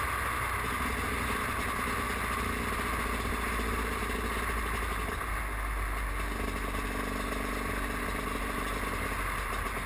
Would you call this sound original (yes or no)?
yes